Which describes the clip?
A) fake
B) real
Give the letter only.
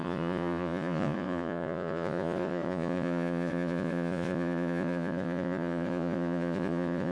A